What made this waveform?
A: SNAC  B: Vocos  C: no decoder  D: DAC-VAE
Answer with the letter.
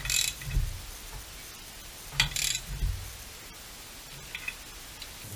C